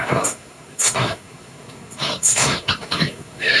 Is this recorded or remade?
remade